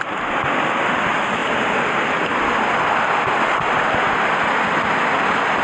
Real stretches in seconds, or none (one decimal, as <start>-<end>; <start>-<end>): 0.0-5.6